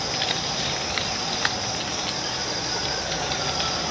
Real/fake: real